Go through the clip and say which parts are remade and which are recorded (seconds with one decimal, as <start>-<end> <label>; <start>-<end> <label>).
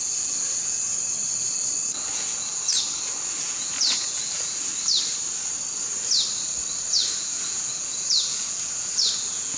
0.0-0.9 remade; 0.9-1.9 recorded; 1.9-2.7 remade; 2.7-3.3 recorded; 3.3-4.7 remade; 4.7-7.0 recorded; 7.0-9.6 remade